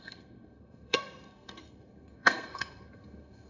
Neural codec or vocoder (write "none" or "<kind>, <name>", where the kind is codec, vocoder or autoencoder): codec, SNAC